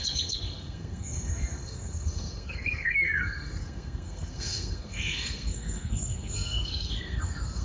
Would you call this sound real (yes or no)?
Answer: no